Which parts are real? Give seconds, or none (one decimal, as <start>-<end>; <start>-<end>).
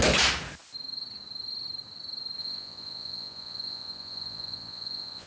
0.0-2.4